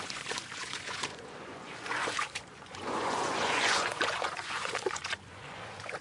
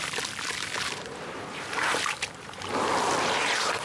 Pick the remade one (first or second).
first